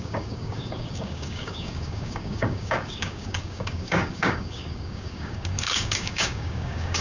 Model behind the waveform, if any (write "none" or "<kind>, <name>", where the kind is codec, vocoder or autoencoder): codec, DAC